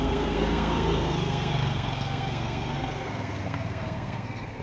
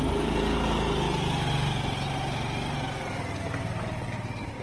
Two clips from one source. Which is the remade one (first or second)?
first